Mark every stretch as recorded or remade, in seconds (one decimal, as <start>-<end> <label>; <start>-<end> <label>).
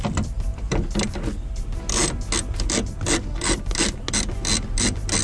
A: 0.0-5.2 recorded